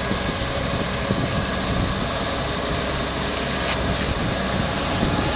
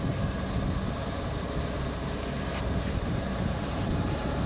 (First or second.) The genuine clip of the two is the first